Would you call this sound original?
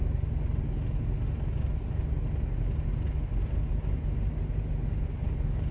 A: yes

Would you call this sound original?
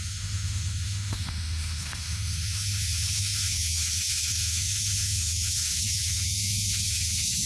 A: no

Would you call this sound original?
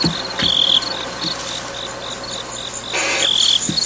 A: yes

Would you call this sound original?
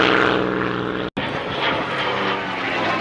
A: yes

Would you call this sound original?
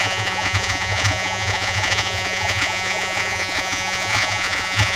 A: no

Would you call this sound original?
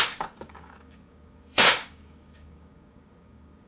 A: no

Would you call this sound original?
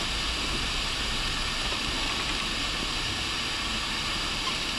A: yes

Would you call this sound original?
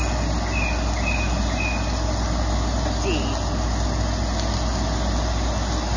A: yes